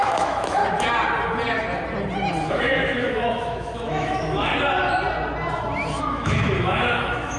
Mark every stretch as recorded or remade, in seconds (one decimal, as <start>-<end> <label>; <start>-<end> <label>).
0.0-0.6 remade; 0.6-2.5 recorded; 2.5-4.5 remade; 4.5-6.0 recorded; 6.0-7.4 remade